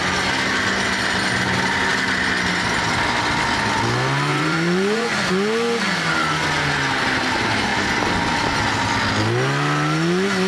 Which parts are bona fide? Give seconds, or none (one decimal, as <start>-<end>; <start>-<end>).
0.0-4.3; 5.3-10.5

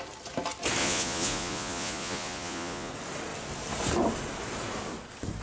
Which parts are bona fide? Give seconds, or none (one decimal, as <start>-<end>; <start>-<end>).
0.0-0.8; 2.9-5.4

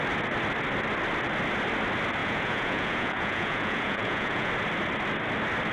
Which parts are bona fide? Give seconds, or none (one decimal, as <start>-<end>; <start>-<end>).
0.0-2.2; 4.5-5.7

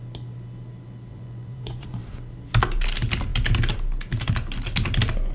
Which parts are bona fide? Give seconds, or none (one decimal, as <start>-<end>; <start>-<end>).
0.0-1.1; 2.0-5.3

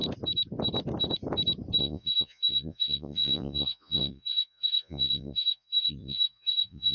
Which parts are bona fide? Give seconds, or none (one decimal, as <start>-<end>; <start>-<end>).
0.0-1.8

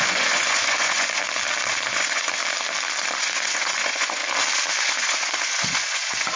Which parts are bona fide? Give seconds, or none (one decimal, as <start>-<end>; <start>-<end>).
1.2-1.7; 2.4-3.2; 4.2-4.8

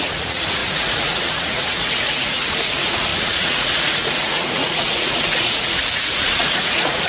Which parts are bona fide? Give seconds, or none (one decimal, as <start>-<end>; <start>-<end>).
none

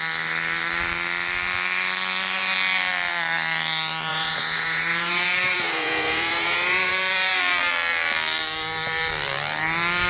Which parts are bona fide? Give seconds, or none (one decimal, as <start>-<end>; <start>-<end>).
0.0-4.1; 7.4-10.1